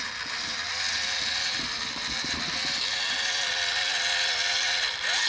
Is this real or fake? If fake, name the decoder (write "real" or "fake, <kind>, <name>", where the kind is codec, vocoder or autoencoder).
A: real